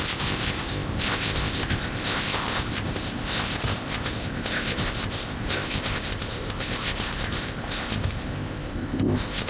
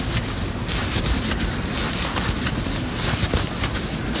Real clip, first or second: second